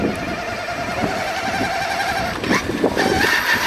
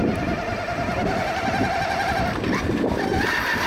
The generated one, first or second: second